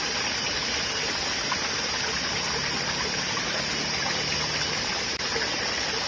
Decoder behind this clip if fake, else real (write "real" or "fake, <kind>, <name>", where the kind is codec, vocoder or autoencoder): real